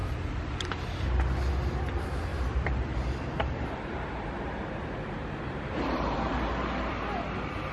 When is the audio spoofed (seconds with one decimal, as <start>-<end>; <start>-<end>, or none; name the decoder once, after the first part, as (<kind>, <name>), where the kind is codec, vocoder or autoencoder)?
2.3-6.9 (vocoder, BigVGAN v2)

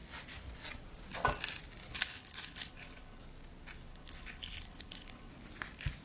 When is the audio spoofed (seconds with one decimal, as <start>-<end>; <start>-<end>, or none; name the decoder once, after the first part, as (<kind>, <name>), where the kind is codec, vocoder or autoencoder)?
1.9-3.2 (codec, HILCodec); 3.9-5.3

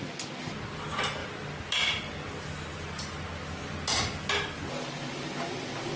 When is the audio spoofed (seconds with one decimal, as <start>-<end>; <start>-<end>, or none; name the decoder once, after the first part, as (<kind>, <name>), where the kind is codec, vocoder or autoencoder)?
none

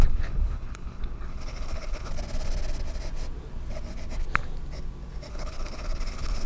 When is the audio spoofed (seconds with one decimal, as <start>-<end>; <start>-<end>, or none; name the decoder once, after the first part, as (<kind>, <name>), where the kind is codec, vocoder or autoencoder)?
0.0-2.1 (codec, HILCodec); 5.3-6.5

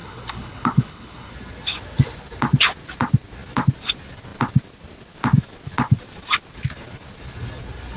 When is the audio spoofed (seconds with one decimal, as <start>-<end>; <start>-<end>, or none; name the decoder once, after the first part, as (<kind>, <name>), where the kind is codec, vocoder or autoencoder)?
0.0-1.3 (codec, HILCodec)

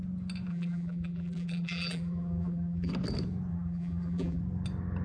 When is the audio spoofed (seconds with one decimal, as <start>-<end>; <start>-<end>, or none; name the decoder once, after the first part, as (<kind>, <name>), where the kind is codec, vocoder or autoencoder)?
0.5-2.9 (vocoder, BigVGAN v2); 3.5-4.4